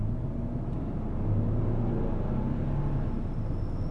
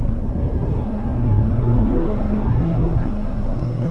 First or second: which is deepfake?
second